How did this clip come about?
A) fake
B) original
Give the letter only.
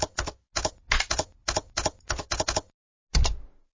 B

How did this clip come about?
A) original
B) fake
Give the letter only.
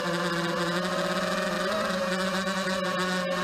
A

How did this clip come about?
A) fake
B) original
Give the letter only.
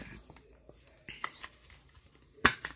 A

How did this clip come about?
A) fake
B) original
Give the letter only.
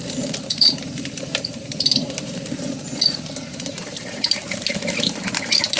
A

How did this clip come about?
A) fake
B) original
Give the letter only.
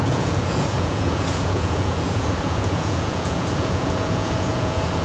A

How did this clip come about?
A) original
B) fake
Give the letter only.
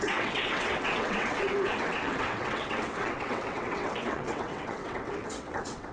B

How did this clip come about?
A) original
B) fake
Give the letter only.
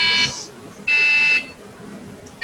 A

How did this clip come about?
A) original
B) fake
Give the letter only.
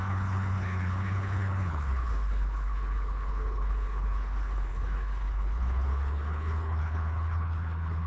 B